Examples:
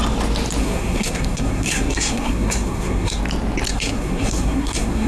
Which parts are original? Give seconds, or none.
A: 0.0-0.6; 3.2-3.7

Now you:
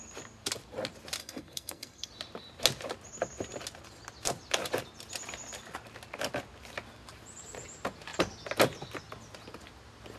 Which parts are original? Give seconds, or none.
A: 0.0-1.2; 2.1-10.2

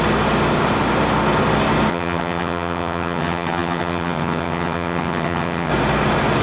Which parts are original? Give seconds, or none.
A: 0.0-1.9; 5.7-6.4

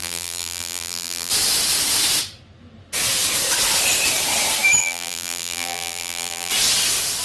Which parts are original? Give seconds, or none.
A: 1.3-4.8; 6.5-7.2